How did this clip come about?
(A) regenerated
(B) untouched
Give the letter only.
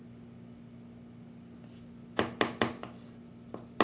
B